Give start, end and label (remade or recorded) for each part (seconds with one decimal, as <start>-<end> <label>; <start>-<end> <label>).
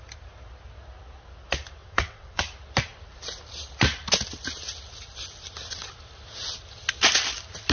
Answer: 0.0-1.8 recorded; 1.8-2.4 remade; 2.4-7.7 recorded